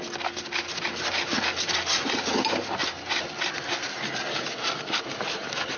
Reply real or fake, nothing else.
real